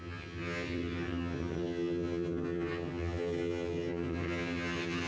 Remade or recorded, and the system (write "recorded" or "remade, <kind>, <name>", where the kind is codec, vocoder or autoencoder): remade, vocoder, HiFi-GAN